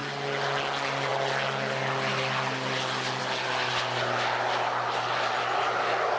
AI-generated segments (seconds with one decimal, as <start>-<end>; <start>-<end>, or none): none